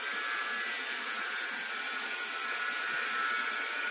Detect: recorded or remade recorded